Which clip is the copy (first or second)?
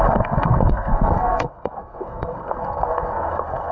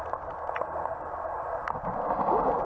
first